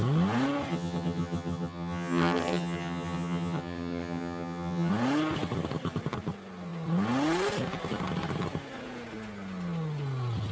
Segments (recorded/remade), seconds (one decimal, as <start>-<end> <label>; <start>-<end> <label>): 0.0-0.7 recorded; 0.7-4.9 remade; 4.9-10.5 recorded